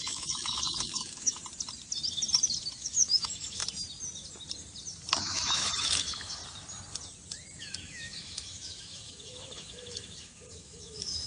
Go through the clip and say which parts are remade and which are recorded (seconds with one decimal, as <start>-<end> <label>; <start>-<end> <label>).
0.0-1.4 remade; 1.4-2.8 recorded; 2.8-3.6 remade; 3.6-5.2 recorded; 5.2-6.4 remade; 6.4-7.6 recorded; 7.6-11.3 remade